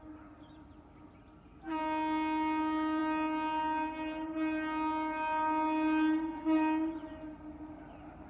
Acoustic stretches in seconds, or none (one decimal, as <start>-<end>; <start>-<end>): 0.0-8.3